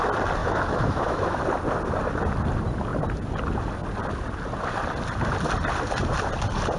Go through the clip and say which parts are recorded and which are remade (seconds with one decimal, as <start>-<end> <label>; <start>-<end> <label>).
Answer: 0.0-0.4 recorded; 0.4-1.4 remade; 1.4-6.8 recorded